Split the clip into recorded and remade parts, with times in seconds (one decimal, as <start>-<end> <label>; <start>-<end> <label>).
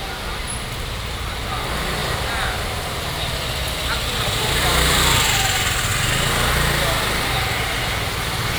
0.0-2.0 remade; 2.0-4.2 recorded; 4.2-5.9 remade; 5.9-8.6 recorded